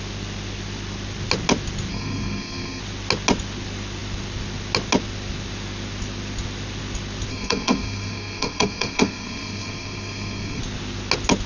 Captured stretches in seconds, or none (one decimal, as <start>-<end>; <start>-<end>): 0.0-1.9; 2.8-7.3; 10.6-11.5